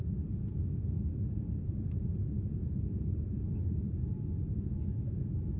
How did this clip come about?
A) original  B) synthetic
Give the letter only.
A